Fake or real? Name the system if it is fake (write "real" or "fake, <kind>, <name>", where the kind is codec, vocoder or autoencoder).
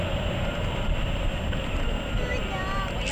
real